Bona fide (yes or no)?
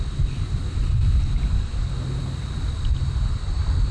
yes